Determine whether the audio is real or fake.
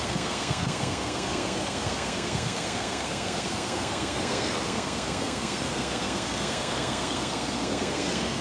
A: fake